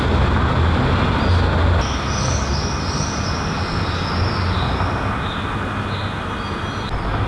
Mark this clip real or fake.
real